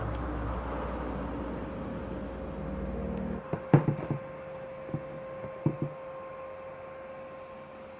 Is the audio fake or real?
real